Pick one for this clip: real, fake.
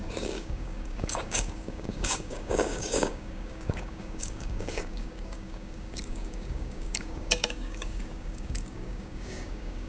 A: fake